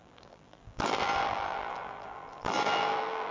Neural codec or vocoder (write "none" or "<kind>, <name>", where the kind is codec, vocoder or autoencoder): vocoder, BigVGAN v2